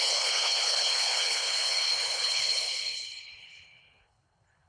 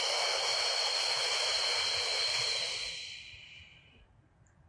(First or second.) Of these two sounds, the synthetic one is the first